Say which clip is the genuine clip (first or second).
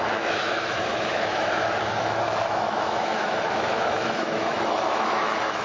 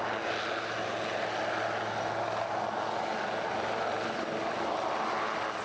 second